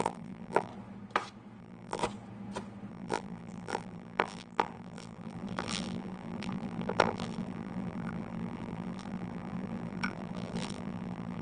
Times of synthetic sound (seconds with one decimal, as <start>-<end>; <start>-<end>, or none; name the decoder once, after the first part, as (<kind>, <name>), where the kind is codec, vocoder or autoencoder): 0.0-0.7 (vocoder, BigVGAN v2); 1.6-2.0; 2.9-11.4